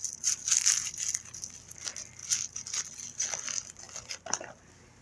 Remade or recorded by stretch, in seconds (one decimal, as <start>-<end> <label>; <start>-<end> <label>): 0.0-5.0 recorded